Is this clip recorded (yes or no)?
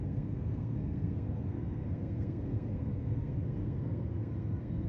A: no